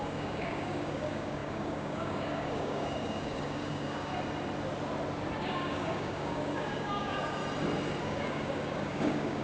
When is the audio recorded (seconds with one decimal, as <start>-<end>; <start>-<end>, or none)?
4.1-5.4; 7.4-8.0

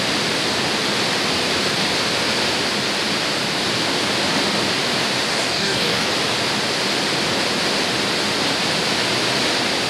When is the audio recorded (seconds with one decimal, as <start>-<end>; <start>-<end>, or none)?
0.0-5.3; 6.1-9.9

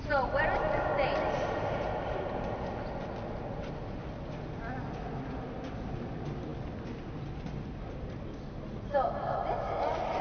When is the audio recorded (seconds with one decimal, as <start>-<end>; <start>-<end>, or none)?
0.0-10.2

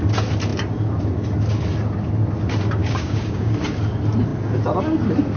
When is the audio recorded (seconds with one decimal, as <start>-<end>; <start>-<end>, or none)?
0.0-2.8; 3.5-5.4

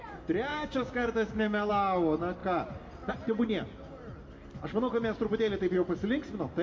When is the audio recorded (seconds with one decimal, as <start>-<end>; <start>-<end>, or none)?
0.0-0.5; 1.7-6.6

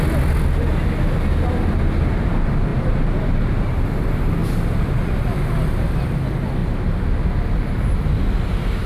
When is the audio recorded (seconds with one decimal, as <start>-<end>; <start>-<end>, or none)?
0.0-8.9

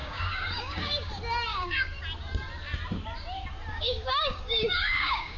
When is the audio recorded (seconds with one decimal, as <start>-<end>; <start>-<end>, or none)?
1.1-1.5; 2.0-3.7

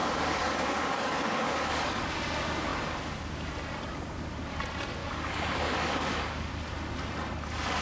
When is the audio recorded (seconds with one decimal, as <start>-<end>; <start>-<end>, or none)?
2.0-5.0; 6.5-7.8